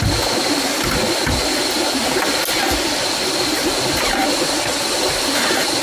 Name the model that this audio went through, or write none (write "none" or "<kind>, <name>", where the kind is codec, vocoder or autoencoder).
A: none